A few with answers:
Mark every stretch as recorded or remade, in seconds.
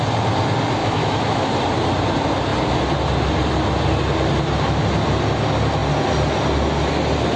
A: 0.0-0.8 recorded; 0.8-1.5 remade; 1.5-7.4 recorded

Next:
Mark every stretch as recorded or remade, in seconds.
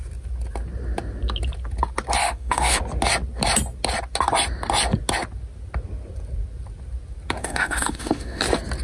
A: 0.0-2.2 recorded; 2.2-2.8 remade; 2.8-7.4 recorded; 7.4-8.4 remade; 8.4-8.8 recorded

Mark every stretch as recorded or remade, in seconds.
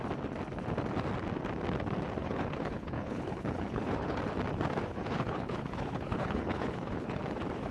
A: 0.0-2.2 recorded; 2.2-4.2 remade; 4.2-4.9 recorded; 4.9-7.2 remade; 7.2-7.7 recorded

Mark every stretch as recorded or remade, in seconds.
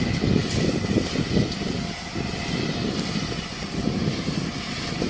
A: 0.0-5.1 recorded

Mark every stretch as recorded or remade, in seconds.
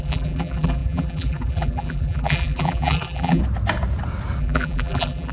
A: 0.0-3.4 remade; 3.4-4.4 recorded; 4.4-5.3 remade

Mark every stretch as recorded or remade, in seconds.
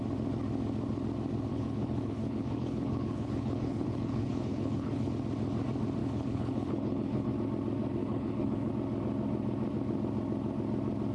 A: 0.0-1.5 recorded; 1.5-5.1 remade; 5.1-6.0 recorded; 6.0-7.3 remade; 7.3-8.0 recorded; 8.0-8.7 remade; 8.7-11.1 recorded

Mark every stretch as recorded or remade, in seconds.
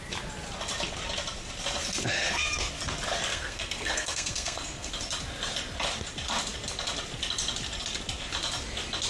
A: 0.0-2.1 recorded; 2.1-2.7 remade; 2.7-3.3 recorded; 3.3-4.9 remade; 4.9-9.1 recorded